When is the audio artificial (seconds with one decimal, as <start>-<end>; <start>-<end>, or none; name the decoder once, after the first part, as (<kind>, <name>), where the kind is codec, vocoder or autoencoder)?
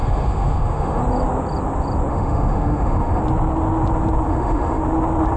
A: 0.0-1.0 (autoencoder, DAC-VAE); 2.1-3.2; 4.3-4.8